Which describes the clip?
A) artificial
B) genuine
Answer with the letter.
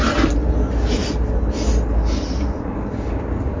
B